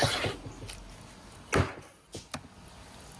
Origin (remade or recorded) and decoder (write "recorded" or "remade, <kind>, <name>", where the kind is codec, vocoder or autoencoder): recorded